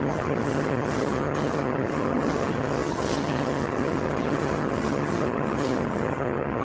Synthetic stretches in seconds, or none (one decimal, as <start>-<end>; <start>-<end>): 0.0-6.6